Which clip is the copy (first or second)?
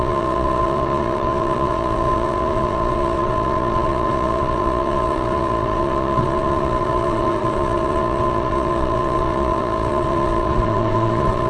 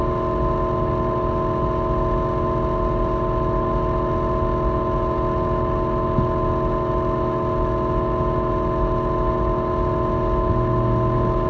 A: first